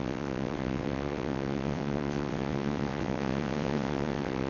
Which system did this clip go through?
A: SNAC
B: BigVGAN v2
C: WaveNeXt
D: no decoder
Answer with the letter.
C